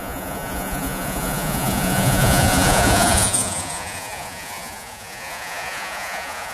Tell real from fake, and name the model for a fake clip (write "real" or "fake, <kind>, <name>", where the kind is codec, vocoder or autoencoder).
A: fake, vocoder, Vocos